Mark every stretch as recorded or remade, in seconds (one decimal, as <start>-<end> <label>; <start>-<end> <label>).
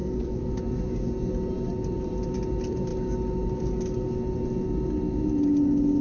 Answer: 0.0-0.5 remade; 0.5-6.0 recorded